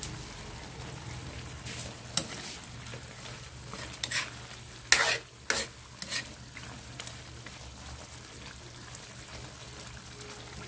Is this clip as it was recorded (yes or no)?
yes